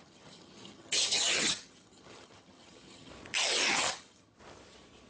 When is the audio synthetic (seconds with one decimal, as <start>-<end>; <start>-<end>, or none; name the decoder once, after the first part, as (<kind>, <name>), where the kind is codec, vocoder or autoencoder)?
0.0-3.1 (vocoder, HiFi-GAN); 3.7-4.4